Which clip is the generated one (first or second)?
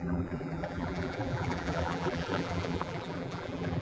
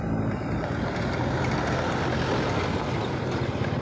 first